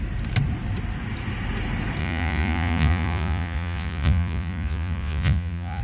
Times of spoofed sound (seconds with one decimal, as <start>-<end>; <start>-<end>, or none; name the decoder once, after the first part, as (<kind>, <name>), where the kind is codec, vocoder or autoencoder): 2.0-5.8 (vocoder, Vocos)